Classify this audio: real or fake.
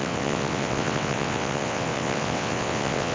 fake